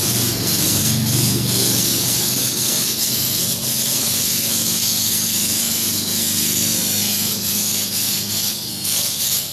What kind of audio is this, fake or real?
fake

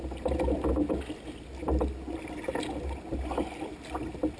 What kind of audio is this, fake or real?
real